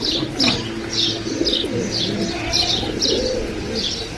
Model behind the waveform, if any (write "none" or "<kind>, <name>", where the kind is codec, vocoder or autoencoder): none